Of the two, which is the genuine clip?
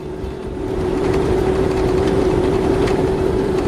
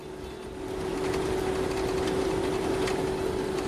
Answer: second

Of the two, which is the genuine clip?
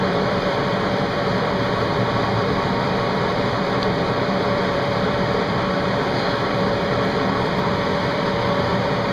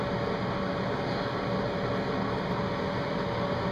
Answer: second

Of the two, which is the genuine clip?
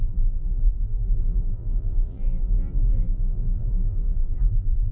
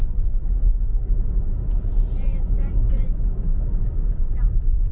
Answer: second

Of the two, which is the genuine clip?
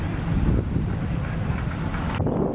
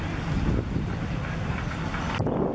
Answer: second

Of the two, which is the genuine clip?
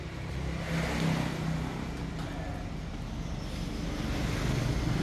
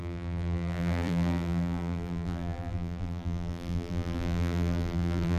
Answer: first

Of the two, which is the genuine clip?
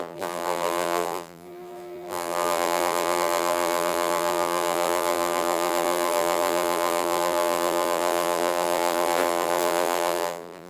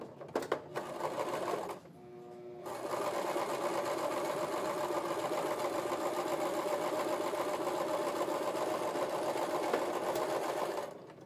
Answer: second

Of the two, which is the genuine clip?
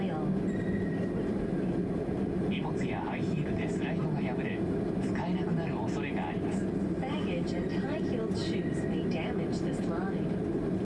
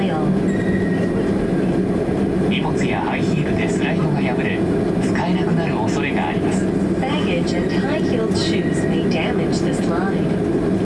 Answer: second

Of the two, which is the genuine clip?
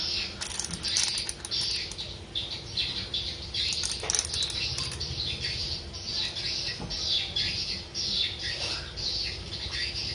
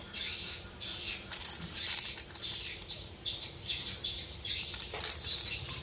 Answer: first